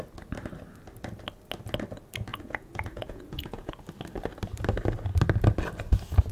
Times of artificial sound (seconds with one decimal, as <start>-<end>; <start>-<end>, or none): 2.3-3.7